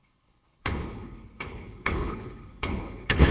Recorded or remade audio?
remade